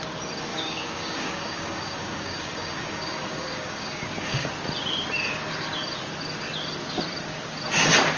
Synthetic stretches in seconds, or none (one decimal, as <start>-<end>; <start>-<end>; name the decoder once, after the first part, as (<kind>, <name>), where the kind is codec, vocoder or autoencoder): 0.5-4.5 (codec, DAC)